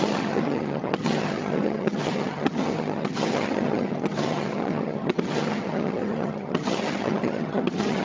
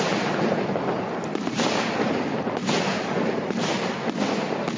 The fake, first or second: first